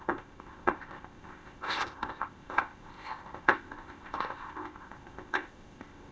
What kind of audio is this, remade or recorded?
remade